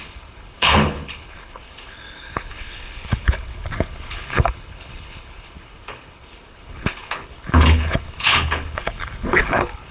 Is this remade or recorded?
remade